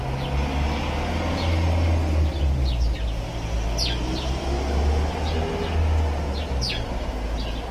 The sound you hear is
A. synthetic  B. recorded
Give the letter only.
B